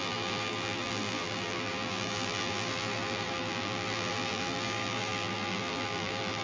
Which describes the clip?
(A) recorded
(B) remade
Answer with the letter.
B